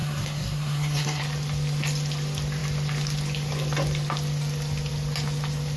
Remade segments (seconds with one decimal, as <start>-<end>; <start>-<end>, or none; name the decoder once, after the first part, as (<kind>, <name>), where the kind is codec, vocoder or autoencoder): 0.0-1.2 (codec, SNAC)